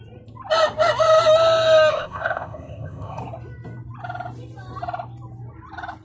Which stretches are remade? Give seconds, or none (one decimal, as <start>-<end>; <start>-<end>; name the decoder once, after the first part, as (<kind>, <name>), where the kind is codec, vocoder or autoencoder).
1.9-3.2 (codec, ZipCodec)